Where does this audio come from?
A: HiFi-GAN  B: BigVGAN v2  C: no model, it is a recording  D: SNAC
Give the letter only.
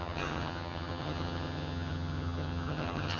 A